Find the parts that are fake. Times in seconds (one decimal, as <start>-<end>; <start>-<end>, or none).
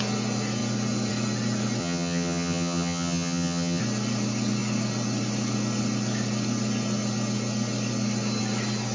1.8-3.8